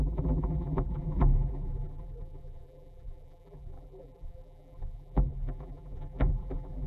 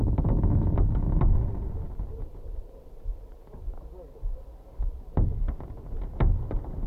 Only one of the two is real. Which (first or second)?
second